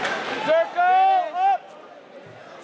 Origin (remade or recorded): recorded